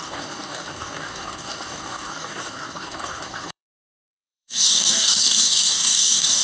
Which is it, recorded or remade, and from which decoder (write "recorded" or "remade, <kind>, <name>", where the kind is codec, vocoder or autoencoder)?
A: remade, codec, DAC